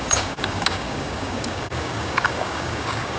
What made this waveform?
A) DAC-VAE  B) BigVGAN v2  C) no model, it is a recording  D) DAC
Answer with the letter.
D